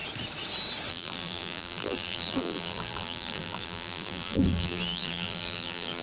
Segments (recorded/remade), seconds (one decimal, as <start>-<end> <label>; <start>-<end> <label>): 0.0-0.9 recorded; 0.9-6.0 remade